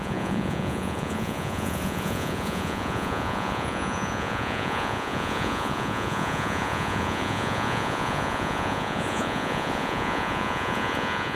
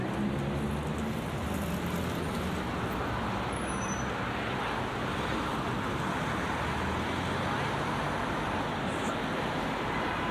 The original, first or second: second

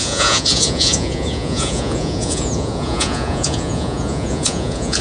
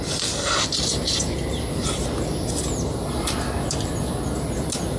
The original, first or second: second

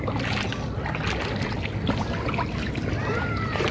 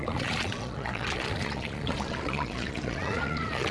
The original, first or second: first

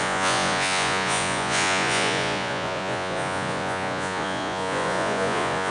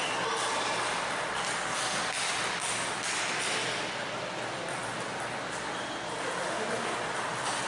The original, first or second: second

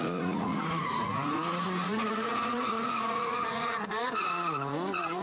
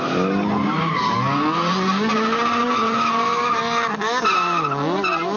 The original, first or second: second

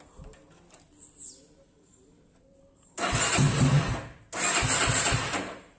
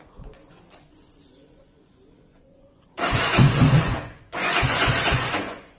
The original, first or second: first